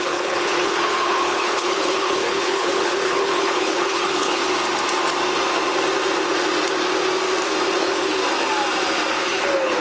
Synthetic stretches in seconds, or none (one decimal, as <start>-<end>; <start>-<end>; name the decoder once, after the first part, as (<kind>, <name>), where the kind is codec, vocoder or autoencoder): 0.0-4.4 (codec, HILCodec); 7.8-8.2; 9.1-9.8